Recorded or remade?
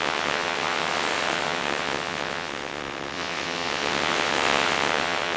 remade